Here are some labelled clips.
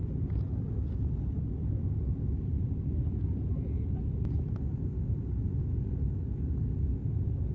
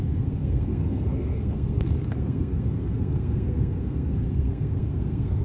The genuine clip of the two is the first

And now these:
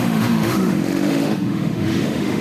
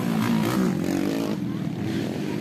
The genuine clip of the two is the second